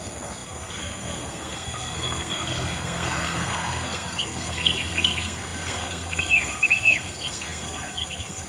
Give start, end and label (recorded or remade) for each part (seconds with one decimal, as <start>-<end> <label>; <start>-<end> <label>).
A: 0.0-8.5 remade